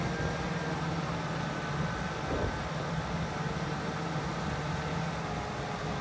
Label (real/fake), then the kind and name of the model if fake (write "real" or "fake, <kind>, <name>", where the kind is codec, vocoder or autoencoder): real